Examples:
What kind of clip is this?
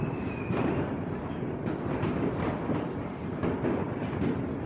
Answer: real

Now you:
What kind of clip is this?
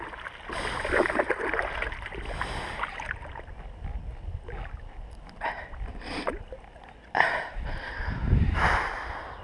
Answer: real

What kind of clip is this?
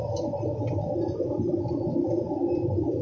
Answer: real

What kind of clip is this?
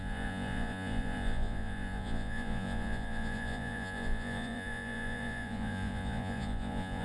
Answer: fake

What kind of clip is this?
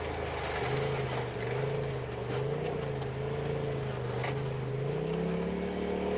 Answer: real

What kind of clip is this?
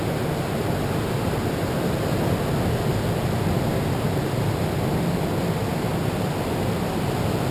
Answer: real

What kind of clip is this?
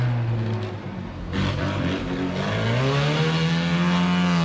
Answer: real